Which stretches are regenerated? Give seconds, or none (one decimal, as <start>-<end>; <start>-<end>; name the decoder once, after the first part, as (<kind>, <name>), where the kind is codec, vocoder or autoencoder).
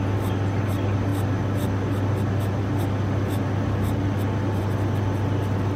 none